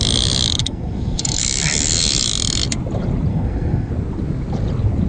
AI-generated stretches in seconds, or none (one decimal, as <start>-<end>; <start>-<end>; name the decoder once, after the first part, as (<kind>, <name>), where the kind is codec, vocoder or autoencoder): 0.6-1.4 (codec, SNAC); 3.3-3.9